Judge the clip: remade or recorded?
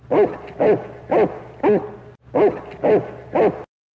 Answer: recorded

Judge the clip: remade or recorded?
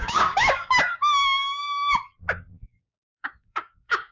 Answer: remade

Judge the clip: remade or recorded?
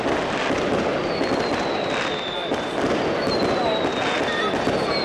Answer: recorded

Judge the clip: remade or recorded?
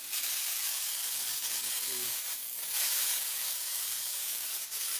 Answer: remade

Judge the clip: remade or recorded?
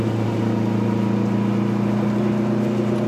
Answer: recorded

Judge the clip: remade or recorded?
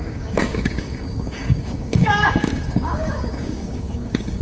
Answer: remade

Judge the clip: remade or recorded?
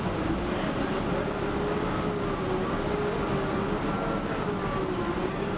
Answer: recorded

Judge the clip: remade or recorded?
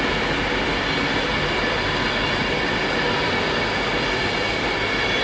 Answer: recorded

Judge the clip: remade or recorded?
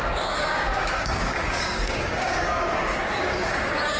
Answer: remade